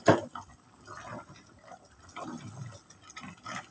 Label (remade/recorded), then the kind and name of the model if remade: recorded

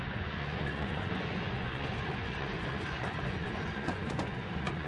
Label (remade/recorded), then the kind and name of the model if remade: remade, vocoder, Vocos